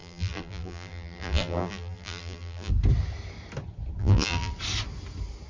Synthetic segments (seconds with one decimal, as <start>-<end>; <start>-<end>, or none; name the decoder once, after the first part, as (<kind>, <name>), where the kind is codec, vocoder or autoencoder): 0.0-2.7 (vocoder, BigVGAN v2); 4.0-4.5

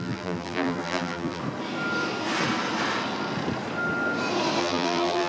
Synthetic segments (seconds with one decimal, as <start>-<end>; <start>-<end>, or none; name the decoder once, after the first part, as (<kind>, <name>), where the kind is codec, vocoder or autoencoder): 0.0-1.4 (vocoder, BigVGAN v2); 4.6-5.3

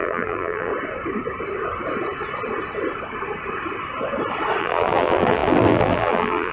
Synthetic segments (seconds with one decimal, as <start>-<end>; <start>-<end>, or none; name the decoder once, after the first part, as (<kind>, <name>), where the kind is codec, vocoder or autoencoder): 0.0-0.7 (vocoder, BigVGAN v2); 4.6-6.5

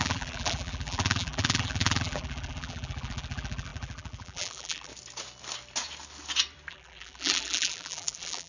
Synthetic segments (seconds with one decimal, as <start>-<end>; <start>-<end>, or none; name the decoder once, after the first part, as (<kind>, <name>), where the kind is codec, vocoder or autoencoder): 0.0-4.9 (vocoder, BigVGAN v2); 6.7-8.5

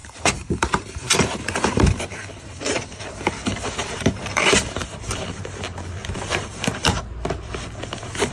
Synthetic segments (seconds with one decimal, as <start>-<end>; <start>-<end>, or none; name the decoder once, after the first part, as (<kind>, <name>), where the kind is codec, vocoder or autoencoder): 0.0-3.3 (vocoder, BigVGAN v2); 3.8-5.1; 6.0-7.0